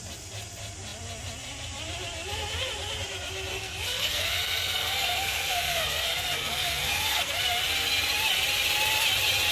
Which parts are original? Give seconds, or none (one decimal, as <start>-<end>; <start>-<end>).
0.0-3.5; 7.4-9.5